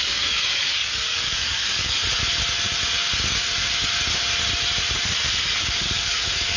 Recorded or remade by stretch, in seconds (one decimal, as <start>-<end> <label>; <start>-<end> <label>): 0.0-2.0 remade; 2.0-5.4 recorded; 5.4-6.6 remade